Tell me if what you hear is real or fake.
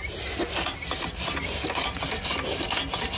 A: real